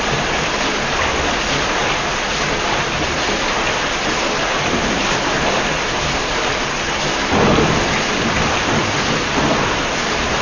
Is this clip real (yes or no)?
yes